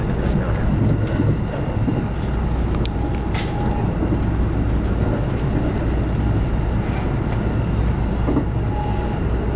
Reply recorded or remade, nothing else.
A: recorded